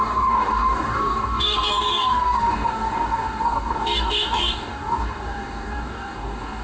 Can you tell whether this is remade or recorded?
remade